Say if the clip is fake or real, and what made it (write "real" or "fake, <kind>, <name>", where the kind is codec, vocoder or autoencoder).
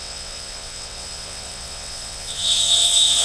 fake, vocoder, WaveNeXt